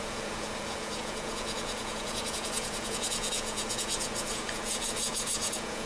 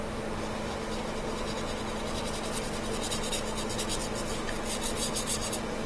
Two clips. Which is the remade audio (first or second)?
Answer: first